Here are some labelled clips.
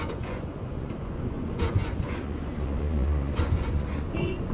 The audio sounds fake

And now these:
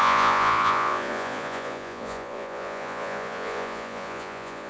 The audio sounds fake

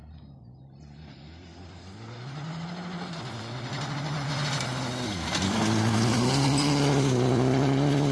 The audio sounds real